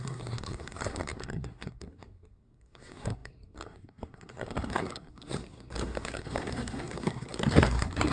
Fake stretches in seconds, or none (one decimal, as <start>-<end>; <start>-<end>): 0.0-8.1